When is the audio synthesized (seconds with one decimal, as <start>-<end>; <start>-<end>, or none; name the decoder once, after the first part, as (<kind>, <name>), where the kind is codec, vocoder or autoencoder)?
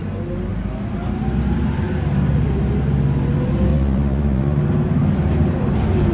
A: 3.7-4.6 (vocoder, Vocos)